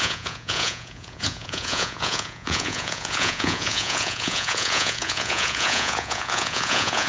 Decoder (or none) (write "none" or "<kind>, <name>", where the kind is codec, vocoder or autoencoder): vocoder, Vocos